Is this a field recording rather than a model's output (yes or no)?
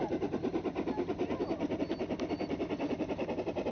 yes